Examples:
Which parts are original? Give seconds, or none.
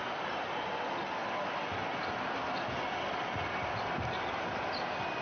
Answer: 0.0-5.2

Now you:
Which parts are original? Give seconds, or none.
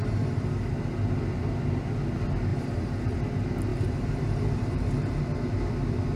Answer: 0.7-2.5; 3.2-3.7; 5.2-6.2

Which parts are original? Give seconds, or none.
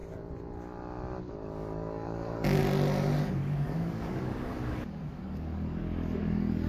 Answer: 0.0-1.2; 2.6-3.2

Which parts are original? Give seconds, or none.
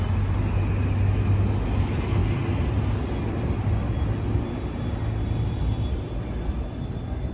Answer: 0.0-7.3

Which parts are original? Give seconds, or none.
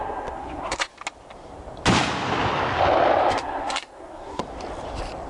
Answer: 0.9-3.3; 4.4-5.3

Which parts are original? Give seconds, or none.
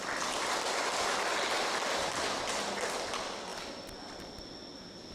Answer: 0.0-3.1; 3.5-5.1